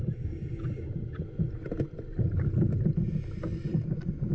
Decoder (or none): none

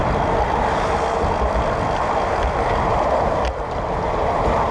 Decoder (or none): none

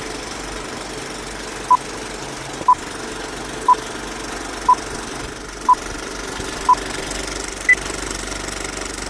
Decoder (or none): none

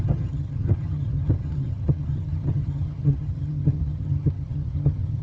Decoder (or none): vocoder, HiFi-GAN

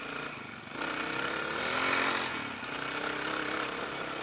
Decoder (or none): none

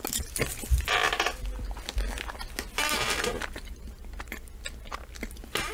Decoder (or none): none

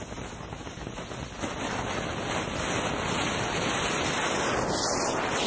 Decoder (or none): none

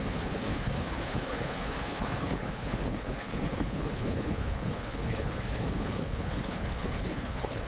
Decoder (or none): codec, HILCodec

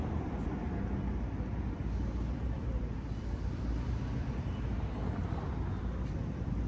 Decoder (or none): none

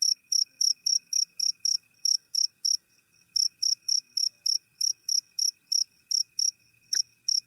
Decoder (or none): codec, DAC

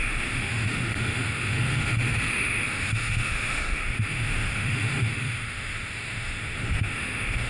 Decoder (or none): autoencoder, DAC-VAE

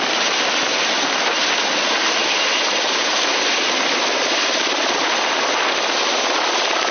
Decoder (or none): none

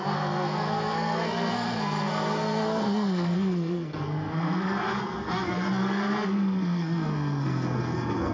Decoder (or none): codec, SNAC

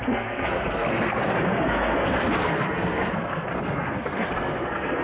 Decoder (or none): codec, SNAC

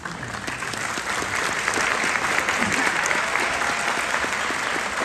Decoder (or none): none